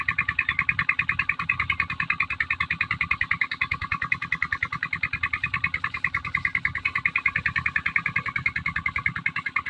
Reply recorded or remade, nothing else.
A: recorded